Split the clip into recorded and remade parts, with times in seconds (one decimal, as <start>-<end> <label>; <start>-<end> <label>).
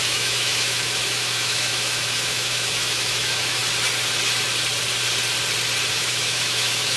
0.0-3.6 remade; 3.6-5.9 recorded; 5.9-7.0 remade